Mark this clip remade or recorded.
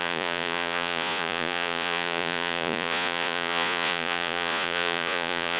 remade